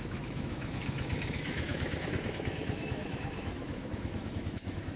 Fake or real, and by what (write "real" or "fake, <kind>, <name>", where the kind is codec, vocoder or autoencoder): fake, autoencoder, DAC-VAE